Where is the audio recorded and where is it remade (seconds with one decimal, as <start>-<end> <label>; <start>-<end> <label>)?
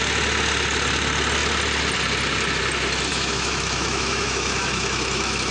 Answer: 0.0-3.1 recorded; 3.1-5.5 remade